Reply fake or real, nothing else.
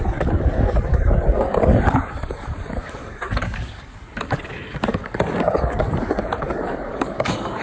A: fake